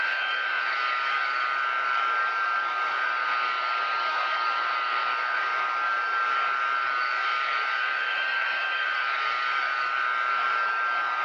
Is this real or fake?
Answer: fake